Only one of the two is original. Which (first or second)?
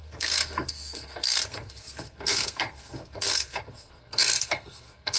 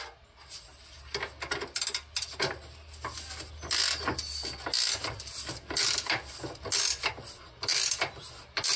second